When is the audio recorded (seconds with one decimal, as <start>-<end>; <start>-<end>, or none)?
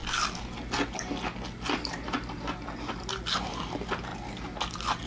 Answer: 0.0-5.1